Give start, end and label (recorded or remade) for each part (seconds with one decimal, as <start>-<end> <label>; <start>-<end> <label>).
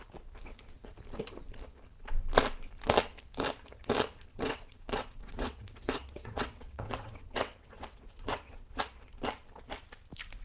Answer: 0.0-4.3 recorded; 4.3-8.8 remade; 8.8-10.4 recorded